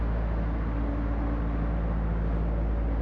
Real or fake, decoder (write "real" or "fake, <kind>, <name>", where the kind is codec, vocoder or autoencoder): real